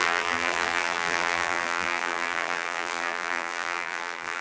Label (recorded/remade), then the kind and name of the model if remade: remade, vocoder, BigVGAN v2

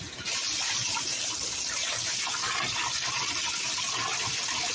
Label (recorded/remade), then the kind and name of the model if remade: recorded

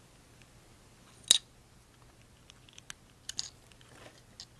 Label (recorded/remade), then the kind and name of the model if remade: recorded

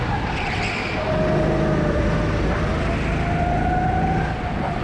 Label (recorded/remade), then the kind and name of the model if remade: recorded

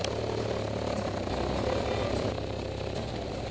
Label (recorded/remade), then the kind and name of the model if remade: recorded